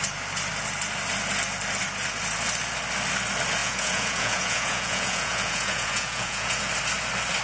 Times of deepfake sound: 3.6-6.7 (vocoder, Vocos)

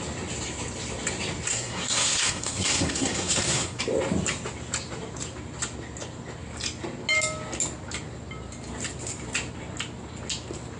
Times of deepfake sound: 1.5-3.8 (codec, SNAC)

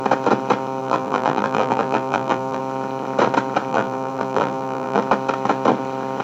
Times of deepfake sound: 0.8-2.6 (vocoder, BigVGAN v2); 3.7-5.0

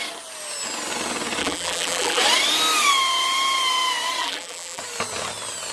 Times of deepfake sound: 1.4-2.2 (vocoder, BigVGAN v2); 4.2-4.8

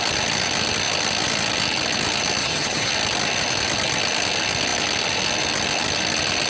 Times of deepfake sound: 2.4-2.9 (vocoder, HiFi-GAN)

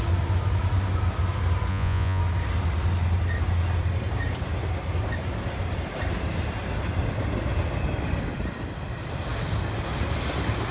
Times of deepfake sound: 1.7-2.2 (vocoder, Vocos)